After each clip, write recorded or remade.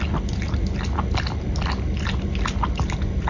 recorded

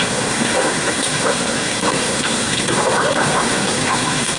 remade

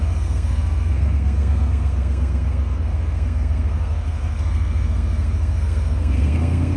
remade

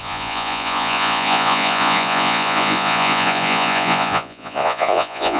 remade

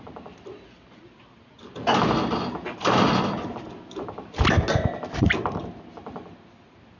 recorded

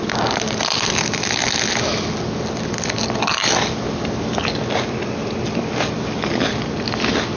recorded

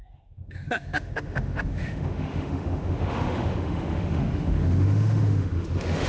remade